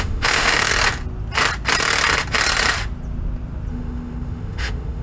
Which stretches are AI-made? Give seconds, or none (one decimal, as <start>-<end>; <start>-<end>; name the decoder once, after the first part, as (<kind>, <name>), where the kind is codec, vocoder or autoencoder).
0.0-0.7 (autoencoder, DAC-VAE); 3.7-5.0